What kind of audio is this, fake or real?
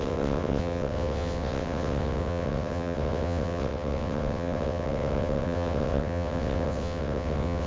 fake